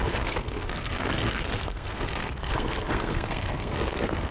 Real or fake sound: fake